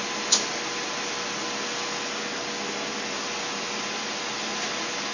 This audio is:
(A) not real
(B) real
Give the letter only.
B